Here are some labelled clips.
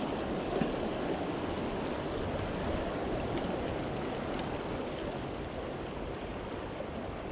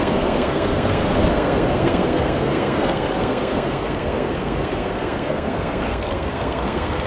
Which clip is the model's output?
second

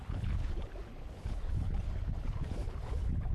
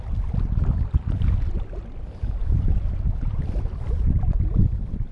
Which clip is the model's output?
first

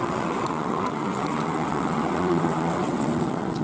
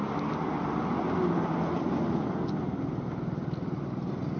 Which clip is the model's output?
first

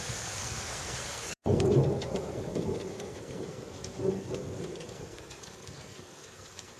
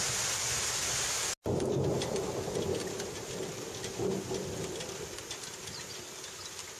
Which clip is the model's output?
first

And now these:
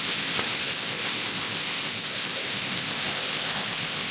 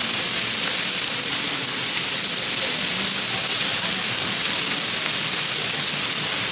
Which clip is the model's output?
first